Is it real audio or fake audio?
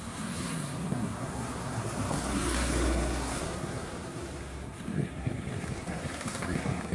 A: fake